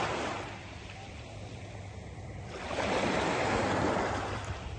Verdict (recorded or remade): recorded